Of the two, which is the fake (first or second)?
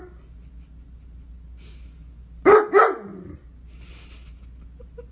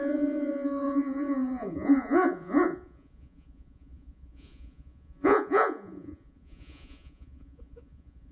second